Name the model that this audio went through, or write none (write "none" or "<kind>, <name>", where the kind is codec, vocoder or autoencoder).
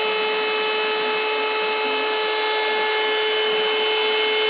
none